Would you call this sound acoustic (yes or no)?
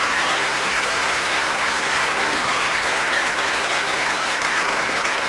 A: no